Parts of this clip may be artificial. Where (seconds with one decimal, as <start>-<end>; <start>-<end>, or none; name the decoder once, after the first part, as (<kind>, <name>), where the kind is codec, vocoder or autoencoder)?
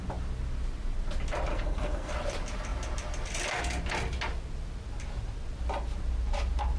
1.5-2.1 (codec, SNAC)